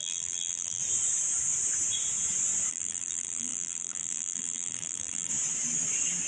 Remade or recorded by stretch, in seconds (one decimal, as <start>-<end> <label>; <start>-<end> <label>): 0.0-0.8 remade; 0.8-2.7 recorded; 2.7-5.3 remade; 5.3-6.3 recorded